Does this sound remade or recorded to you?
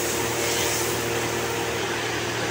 recorded